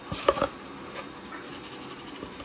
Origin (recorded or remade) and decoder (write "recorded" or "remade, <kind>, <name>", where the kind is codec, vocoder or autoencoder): recorded